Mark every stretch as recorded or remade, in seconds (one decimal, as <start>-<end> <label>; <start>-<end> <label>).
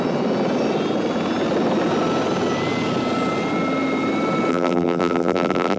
0.0-4.5 recorded; 4.5-5.8 remade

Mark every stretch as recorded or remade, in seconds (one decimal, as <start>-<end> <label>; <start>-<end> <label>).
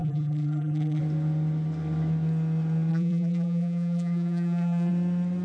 0.0-1.0 remade; 1.0-2.9 recorded; 2.9-4.9 remade; 4.9-5.4 recorded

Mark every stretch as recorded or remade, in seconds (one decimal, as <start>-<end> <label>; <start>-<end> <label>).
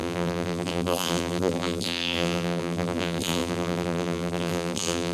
0.0-5.1 remade